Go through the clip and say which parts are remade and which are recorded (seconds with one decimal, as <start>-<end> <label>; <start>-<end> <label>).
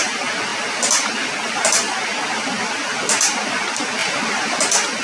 0.0-5.0 recorded